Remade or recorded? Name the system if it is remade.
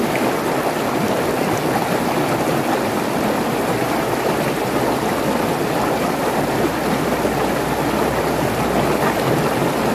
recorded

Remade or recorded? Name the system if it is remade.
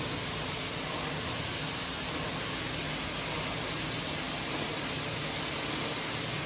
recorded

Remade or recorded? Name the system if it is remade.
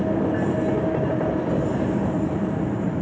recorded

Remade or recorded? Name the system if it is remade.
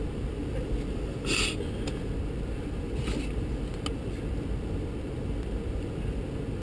recorded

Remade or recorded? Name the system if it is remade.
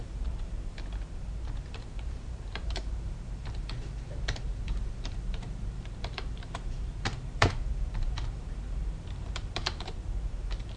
remade, vocoder, BigVGAN v2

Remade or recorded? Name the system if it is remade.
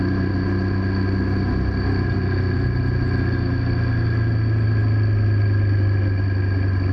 recorded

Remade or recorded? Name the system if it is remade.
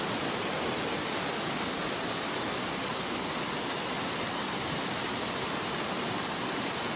recorded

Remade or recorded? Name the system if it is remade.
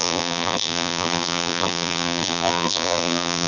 remade, vocoder, BigVGAN v2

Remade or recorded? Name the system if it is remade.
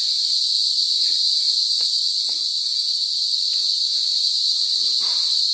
recorded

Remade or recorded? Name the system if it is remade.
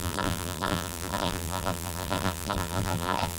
remade, vocoder, BigVGAN v2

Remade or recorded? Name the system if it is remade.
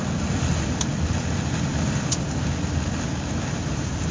recorded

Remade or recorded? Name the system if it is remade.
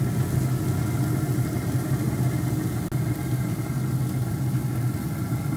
recorded